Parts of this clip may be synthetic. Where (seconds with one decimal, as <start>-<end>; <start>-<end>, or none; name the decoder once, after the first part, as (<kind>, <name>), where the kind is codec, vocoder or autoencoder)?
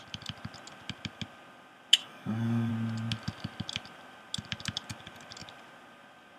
2.0-2.7 (codec, DAC)